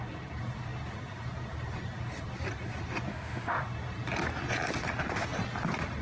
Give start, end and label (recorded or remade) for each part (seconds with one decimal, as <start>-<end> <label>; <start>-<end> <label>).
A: 0.0-3.1 recorded; 3.1-3.6 remade; 3.6-6.0 recorded